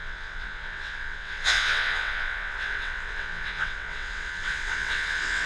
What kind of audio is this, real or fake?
fake